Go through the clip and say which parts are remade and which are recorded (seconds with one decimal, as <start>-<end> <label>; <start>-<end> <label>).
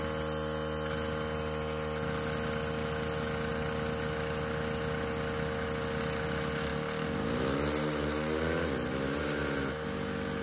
0.0-10.4 recorded